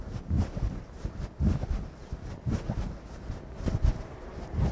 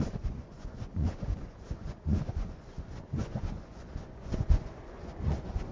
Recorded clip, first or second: first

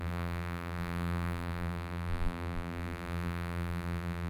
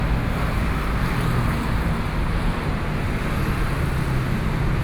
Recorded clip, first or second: second